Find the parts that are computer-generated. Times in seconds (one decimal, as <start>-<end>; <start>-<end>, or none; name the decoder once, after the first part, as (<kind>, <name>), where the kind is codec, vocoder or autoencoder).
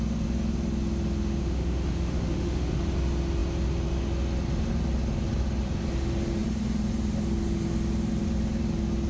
1.4-2.8 (autoencoder, DAC-VAE)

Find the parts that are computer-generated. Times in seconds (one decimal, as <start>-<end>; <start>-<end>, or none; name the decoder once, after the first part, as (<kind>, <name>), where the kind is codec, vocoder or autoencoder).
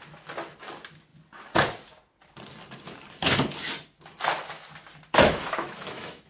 5.1-6.3 (autoencoder, DAC-VAE)